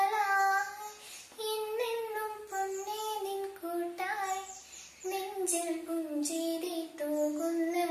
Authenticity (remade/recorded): recorded